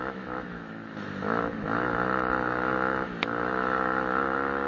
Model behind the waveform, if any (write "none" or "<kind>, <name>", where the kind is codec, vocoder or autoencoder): autoencoder, DAC-VAE